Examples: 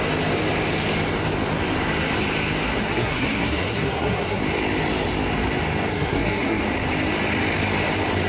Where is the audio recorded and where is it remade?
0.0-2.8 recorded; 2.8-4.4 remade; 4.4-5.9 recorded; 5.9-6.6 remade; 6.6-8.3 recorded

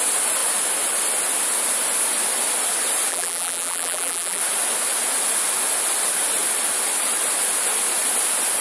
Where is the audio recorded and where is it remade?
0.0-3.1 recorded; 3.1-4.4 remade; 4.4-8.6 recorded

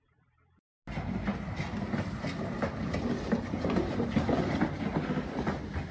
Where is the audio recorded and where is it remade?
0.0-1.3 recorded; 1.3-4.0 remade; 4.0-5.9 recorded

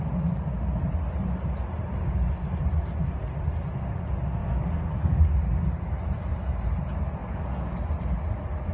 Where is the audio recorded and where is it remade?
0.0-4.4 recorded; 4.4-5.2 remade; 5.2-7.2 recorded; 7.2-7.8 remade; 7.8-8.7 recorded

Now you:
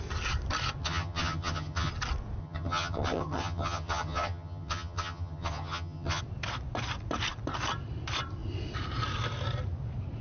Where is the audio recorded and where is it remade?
0.0-0.8 recorded; 0.8-1.9 remade; 1.9-2.4 recorded; 2.4-6.2 remade; 6.2-10.2 recorded

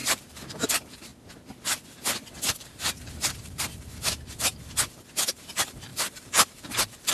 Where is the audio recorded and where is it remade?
0.0-1.1 remade; 1.1-2.5 recorded; 2.5-4.6 remade; 4.6-5.3 recorded; 5.3-7.1 remade

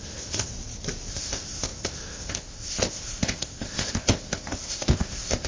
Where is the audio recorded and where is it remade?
0.0-0.5 remade; 0.5-1.1 recorded; 1.1-5.5 remade

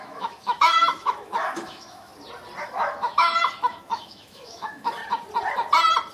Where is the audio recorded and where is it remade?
0.0-2.1 remade; 2.1-2.6 recorded; 2.6-5.0 remade; 5.0-6.1 recorded